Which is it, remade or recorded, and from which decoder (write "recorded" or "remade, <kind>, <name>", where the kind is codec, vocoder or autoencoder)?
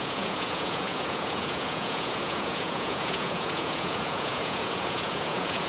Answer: remade, vocoder, Vocos